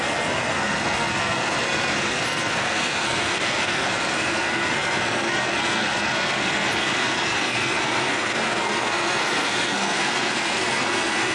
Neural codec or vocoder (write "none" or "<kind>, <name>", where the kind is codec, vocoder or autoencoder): codec, SNAC